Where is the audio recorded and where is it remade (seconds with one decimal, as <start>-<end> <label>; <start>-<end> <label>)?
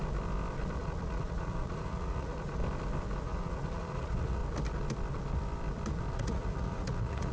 0.0-0.8 recorded; 0.8-2.6 remade; 2.6-3.2 recorded; 3.2-4.4 remade; 4.4-6.1 recorded; 6.1-7.3 remade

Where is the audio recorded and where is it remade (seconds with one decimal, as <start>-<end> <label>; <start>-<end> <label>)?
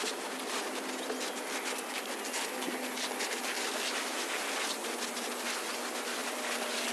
0.0-6.9 recorded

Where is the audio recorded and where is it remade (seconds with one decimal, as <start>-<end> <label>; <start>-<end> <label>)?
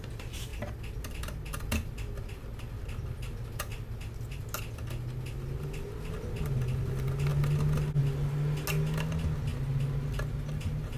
0.0-11.0 recorded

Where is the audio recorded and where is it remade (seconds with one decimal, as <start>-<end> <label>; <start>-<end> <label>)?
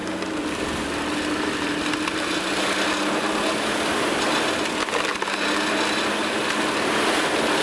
0.0-7.6 recorded